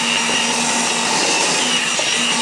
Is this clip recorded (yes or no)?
yes